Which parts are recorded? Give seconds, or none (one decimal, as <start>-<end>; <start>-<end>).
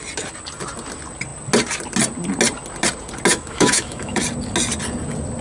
0.0-3.3; 4.2-5.4